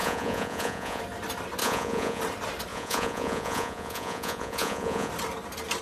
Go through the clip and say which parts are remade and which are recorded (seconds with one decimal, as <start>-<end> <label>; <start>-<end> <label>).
0.0-1.0 remade; 1.0-1.6 recorded; 1.6-2.2 remade; 2.2-2.7 recorded; 2.7-5.1 remade; 5.1-5.8 recorded